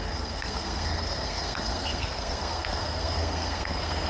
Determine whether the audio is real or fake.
fake